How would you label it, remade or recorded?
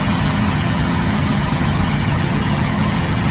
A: remade